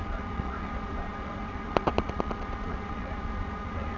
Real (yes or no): no